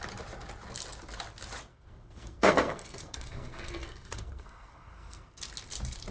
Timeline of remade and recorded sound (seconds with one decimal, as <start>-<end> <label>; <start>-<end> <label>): 0.0-1.7 recorded; 1.7-5.4 remade; 5.4-6.1 recorded